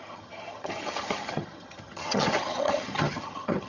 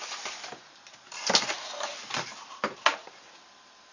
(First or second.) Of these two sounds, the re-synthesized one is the first